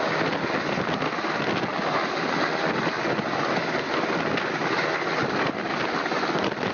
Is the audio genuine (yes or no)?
yes